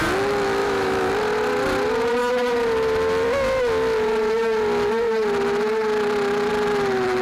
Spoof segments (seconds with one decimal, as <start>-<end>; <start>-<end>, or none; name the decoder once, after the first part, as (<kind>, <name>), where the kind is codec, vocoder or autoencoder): 0.6-1.1 (autoencoder, DAC-VAE)